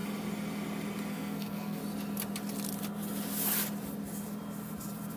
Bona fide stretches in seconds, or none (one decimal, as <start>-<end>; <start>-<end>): 0.0-1.1; 1.8-5.2